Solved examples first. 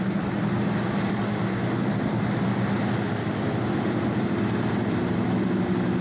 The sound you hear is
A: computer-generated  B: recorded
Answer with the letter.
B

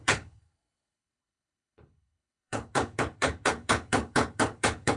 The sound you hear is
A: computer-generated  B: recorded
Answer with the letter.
A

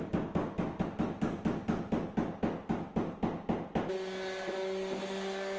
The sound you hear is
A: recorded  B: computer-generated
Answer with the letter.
A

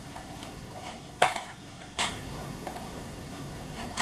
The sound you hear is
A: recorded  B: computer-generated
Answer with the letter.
B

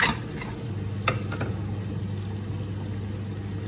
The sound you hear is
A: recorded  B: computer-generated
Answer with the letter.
A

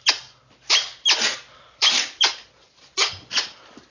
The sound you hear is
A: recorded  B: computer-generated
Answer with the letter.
B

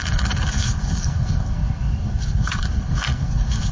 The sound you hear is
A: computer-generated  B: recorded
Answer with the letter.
A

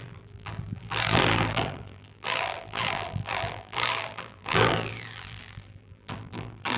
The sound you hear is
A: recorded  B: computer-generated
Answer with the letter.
B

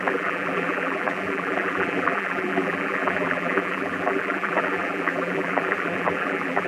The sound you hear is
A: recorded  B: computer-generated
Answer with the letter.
B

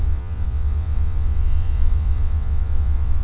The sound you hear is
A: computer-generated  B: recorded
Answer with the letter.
A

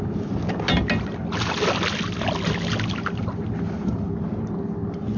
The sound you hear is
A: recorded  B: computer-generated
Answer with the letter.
A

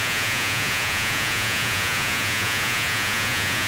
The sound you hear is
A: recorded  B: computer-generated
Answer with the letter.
B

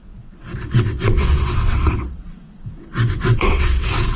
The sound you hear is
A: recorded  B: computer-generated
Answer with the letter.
B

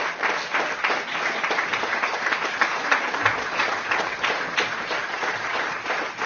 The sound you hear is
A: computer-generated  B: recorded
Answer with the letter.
A